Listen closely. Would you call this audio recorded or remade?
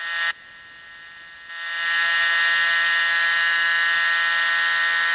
recorded